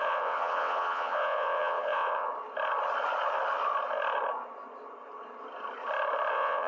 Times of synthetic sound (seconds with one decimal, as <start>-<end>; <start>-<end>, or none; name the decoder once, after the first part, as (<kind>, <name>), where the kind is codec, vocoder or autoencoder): 0.0-2.3 (vocoder, WaveNeXt); 6.3-6.7